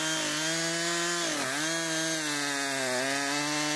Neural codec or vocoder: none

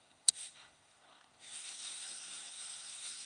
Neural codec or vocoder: codec, SNAC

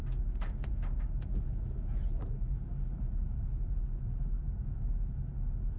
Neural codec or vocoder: none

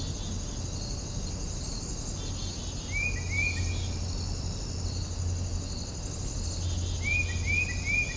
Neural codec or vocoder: none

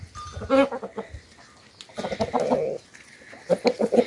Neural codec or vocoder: none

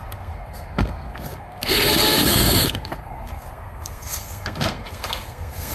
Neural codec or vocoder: codec, SNAC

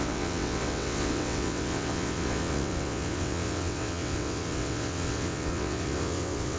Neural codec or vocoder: vocoder, WaveNeXt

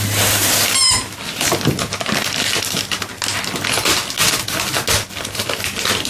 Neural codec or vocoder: none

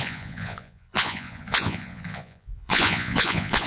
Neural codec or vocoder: vocoder, Vocos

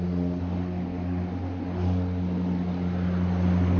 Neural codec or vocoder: none